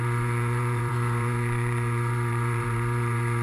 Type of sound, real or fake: fake